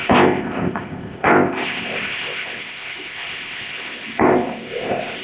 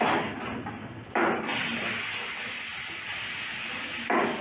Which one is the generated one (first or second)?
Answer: first